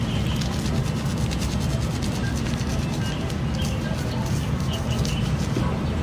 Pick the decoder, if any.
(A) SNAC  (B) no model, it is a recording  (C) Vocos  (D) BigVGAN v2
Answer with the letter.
B